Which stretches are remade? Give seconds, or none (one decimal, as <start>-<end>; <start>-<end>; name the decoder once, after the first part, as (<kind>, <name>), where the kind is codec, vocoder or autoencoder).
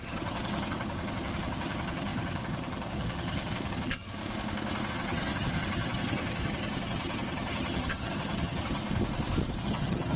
0.0-4.2 (vocoder, HiFi-GAN); 4.9-8.8; 9.6-10.2